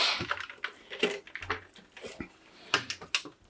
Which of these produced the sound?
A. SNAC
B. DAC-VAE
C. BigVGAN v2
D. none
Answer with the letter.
D